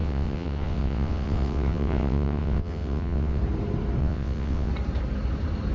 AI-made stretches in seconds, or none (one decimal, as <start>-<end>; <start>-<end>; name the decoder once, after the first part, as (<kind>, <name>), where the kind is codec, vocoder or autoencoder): 0.0-3.4 (vocoder, WaveNeXt); 4.0-4.7

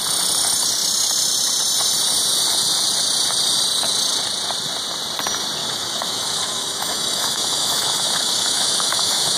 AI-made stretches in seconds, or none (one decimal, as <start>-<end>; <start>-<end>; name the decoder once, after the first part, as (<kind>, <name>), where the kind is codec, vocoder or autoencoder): 5.6-9.4 (autoencoder, DAC-VAE)